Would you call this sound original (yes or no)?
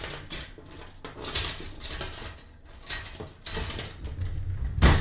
yes